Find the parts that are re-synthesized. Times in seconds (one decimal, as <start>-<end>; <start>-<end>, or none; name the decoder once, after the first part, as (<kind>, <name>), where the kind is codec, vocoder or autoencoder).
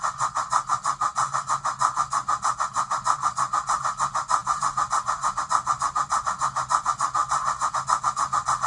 none